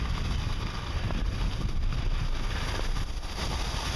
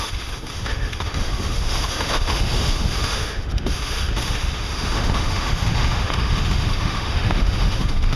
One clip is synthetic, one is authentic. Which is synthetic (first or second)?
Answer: second